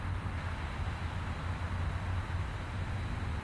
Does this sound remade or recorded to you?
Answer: recorded